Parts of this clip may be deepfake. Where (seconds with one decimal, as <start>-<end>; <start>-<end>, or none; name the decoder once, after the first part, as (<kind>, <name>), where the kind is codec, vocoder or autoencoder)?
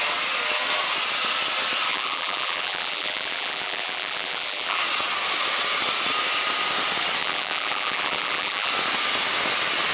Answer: 1.9-4.8 (vocoder, BigVGAN v2); 7.2-8.7